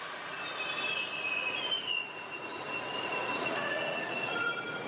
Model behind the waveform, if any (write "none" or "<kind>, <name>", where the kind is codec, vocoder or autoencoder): vocoder, Vocos